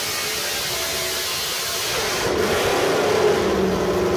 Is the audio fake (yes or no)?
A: no